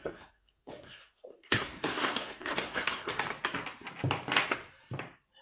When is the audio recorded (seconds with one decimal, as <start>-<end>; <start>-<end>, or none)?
3.1-5.4

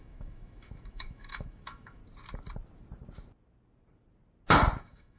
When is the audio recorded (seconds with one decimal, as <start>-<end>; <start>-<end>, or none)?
2.0-4.8

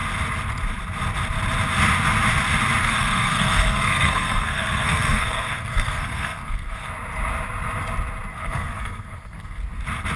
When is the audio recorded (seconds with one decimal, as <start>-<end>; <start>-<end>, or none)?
0.0-2.8; 6.9-8.3; 9.6-10.2

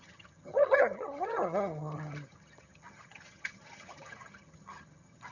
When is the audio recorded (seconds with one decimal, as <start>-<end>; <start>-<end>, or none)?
none

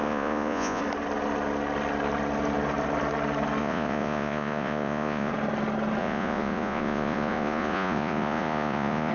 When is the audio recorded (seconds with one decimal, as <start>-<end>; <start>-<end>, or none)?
0.8-3.6; 5.3-6.0

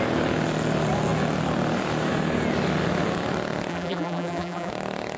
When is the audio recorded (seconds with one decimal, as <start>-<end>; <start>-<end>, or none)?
0.0-3.7; 4.7-5.2

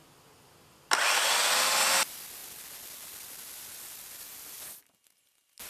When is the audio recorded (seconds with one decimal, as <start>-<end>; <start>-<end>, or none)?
0.0-5.7

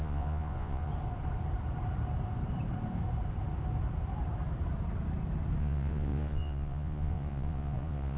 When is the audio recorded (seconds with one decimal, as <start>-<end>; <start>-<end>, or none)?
0.9-5.6